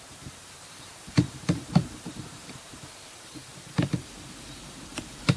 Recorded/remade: remade